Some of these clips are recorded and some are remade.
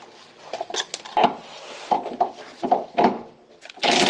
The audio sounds recorded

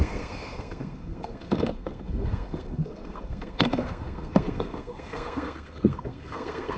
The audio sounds remade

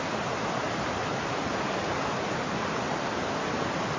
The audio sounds recorded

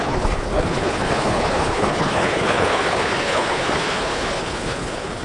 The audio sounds remade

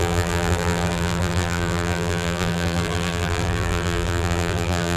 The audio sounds remade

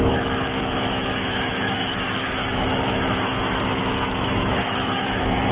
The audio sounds remade